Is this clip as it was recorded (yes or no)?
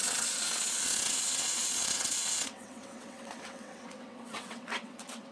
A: no